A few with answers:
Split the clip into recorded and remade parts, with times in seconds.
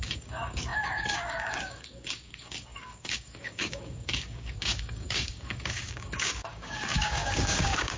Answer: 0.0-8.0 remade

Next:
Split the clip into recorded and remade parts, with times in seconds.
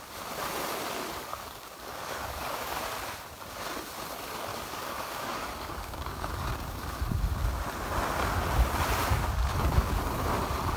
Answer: 0.0-1.3 recorded; 1.3-2.8 remade; 2.8-4.5 recorded; 4.5-7.2 remade; 7.2-9.0 recorded; 9.0-10.0 remade; 10.0-10.8 recorded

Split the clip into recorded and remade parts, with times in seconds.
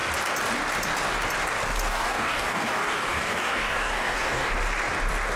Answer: 0.0-1.9 recorded; 1.9-4.5 remade; 4.5-5.4 recorded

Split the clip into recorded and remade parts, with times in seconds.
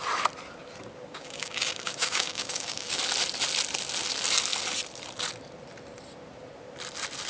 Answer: 0.0-1.1 recorded; 1.1-3.0 remade; 3.0-7.3 recorded